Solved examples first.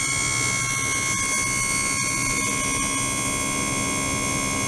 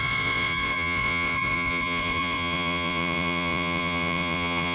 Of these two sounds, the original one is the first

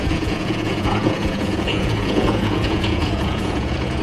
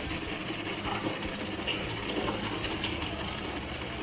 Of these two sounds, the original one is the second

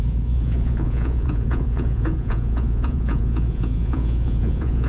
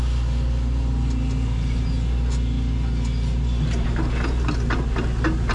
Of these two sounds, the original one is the second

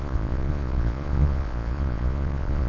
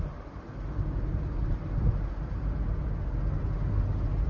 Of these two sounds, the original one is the second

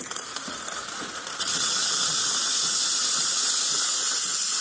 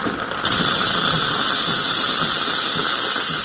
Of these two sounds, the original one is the second